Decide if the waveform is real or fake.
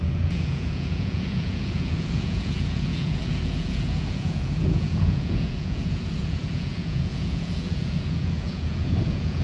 fake